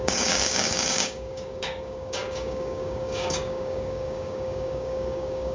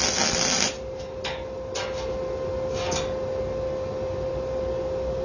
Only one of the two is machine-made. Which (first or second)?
first